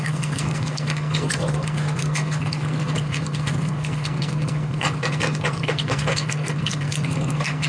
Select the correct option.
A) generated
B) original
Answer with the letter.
A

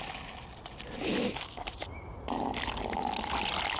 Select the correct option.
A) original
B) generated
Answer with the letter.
A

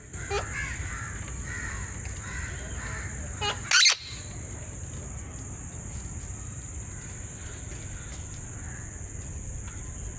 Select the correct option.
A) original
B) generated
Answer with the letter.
A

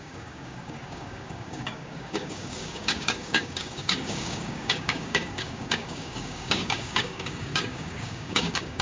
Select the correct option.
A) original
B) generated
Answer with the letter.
B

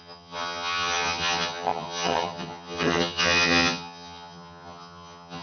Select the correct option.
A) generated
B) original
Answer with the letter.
A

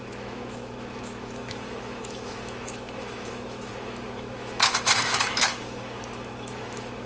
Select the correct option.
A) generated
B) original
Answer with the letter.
A